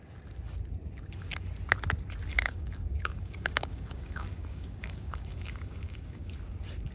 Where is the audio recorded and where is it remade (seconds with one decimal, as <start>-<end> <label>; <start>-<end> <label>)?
0.0-2.3 recorded; 2.3-6.4 remade; 6.4-6.9 recorded